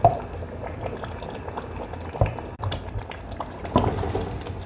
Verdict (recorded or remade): recorded